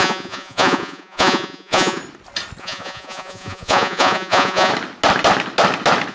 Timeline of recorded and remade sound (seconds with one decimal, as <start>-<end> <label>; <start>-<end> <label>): 0.0-2.0 remade; 2.0-2.6 recorded; 2.6-4.7 remade; 4.7-6.1 recorded